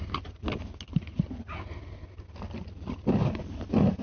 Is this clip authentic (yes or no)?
yes